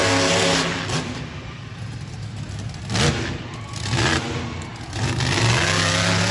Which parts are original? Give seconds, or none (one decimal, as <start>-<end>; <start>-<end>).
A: 0.0-6.3